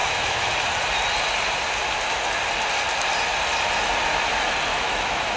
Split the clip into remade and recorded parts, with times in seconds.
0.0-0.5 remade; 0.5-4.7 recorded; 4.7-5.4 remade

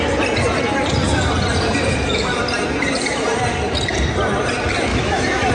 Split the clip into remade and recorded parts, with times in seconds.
0.0-4.9 recorded; 4.9-5.5 remade